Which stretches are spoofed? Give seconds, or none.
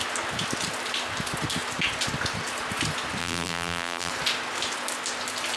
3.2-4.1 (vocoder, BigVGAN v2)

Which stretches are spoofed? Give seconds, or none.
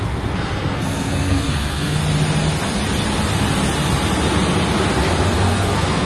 0.0-2.0 (codec, SNAC); 5.3-6.1